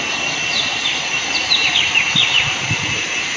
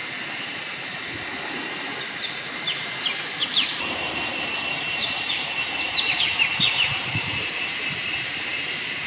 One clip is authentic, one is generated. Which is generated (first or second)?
second